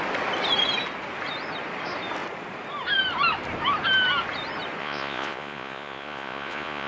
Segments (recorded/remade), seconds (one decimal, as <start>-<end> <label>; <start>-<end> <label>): 0.0-4.8 recorded; 4.8-6.9 remade

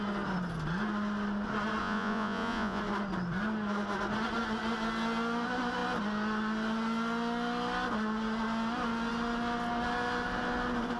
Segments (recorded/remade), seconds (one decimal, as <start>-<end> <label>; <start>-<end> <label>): 0.0-1.8 recorded; 1.8-2.8 remade; 2.8-11.0 recorded